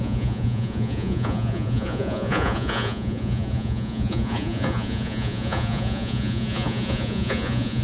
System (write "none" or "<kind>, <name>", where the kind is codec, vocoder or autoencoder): vocoder, Vocos